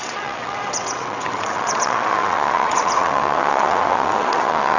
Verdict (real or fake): fake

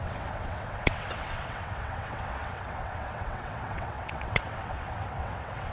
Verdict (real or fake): fake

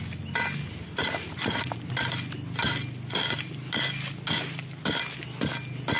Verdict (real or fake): real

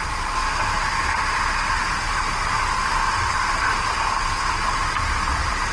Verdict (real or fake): real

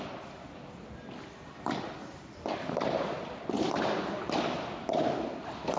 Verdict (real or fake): real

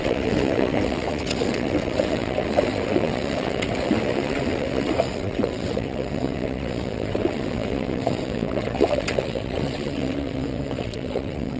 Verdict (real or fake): fake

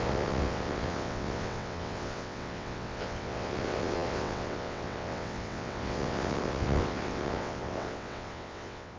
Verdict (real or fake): fake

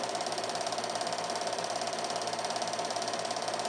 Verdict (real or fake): real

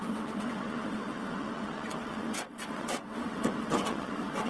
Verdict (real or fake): fake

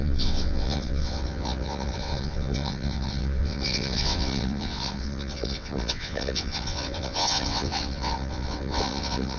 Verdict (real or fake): fake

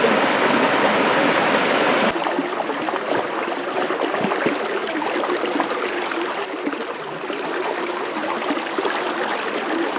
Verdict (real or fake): real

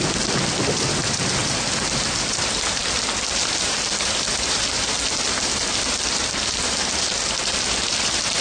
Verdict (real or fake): real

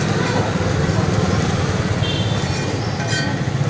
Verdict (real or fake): real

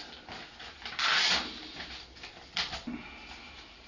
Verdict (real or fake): real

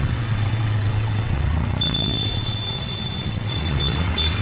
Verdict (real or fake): fake